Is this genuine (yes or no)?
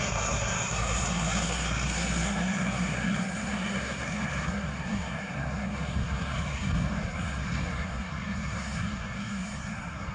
no